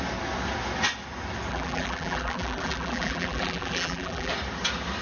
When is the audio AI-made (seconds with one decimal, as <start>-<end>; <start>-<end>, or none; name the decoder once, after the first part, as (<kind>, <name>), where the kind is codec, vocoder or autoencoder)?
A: 1.5-4.3 (vocoder, BigVGAN v2)